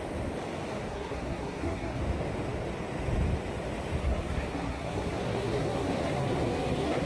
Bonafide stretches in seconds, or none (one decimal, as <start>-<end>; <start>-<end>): 0.0-0.9; 2.0-4.0